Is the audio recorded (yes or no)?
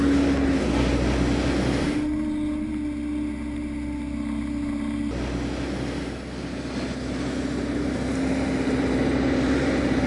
yes